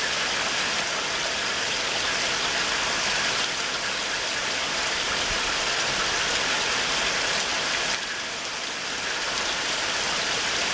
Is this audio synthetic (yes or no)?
no